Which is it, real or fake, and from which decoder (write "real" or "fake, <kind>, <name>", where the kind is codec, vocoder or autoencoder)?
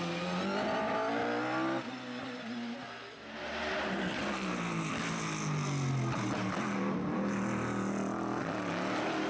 real